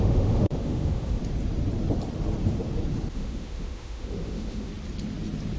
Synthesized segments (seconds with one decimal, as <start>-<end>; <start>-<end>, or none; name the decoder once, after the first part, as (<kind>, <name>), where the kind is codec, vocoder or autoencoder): 0.0-1.2 (autoencoder, DAC-VAE); 3.1-4.7